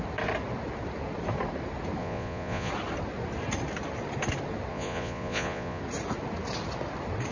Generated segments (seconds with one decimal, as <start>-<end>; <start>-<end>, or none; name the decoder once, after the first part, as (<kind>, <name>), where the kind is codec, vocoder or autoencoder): 2.0-2.7 (vocoder, Vocos); 4.7-5.8